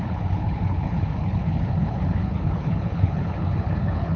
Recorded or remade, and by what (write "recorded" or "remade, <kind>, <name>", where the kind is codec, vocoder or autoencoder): remade, codec, HILCodec